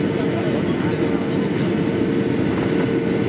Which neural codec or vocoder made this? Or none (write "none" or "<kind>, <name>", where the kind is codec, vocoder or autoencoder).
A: none